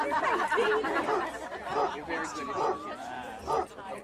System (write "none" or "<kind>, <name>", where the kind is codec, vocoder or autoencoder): vocoder, BigVGAN v2